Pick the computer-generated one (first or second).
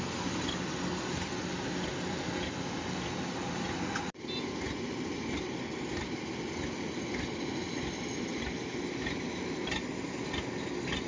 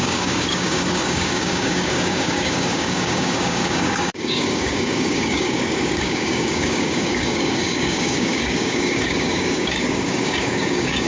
second